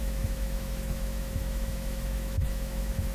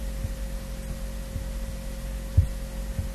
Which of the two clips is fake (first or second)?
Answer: first